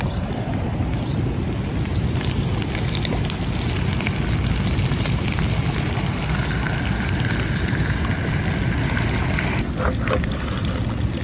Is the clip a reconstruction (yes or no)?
no